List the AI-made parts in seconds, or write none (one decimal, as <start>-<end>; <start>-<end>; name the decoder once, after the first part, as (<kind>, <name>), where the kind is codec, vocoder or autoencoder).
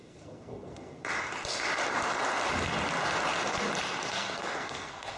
0.0-1.0 (codec, SNAC); 4.1-5.2